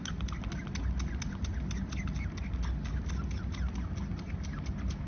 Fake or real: real